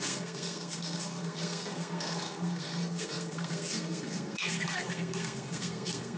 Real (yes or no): no